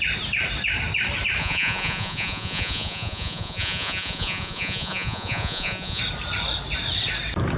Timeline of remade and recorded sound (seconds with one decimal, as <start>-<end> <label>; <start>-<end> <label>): 0.0-1.4 recorded; 1.4-6.0 remade; 6.0-7.6 recorded